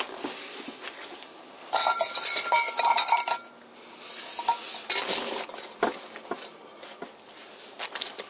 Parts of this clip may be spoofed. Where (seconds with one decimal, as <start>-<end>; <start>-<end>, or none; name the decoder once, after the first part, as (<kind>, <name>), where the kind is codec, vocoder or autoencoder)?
1.3-2.0 (vocoder, BigVGAN v2)